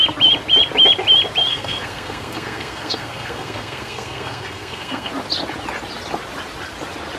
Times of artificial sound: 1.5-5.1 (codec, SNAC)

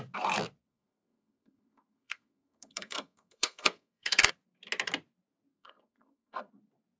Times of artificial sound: 0.7-4.3 (codec, SNAC); 5.5-6.5

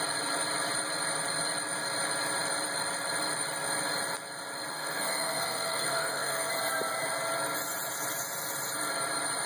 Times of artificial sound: 4.7-6.5 (codec, SNAC)

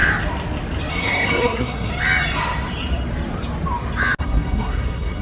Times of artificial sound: 0.9-1.9 (codec, SNAC); 4.2-5.2

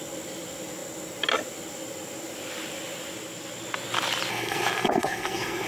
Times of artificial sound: 4.3-5.7 (codec, SNAC)

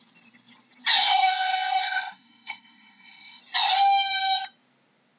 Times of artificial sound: 1.0-3.4 (codec, SNAC)